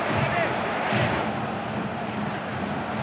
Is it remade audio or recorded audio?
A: recorded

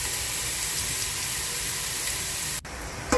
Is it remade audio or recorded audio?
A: remade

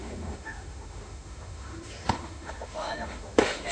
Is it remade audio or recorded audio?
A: remade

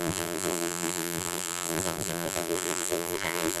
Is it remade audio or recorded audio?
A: remade